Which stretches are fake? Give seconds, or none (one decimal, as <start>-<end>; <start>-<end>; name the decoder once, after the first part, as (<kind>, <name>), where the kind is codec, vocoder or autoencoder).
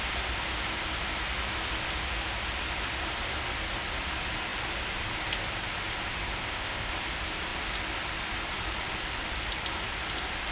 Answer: 6.4-6.9 (codec, ZipCodec)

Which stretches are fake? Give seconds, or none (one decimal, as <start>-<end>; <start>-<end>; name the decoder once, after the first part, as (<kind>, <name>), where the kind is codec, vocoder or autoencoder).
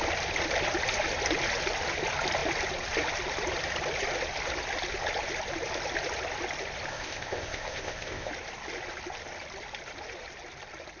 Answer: 6.9-8.3 (codec, ZipCodec)